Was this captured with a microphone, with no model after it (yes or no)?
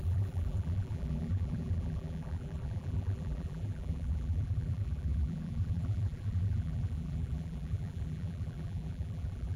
no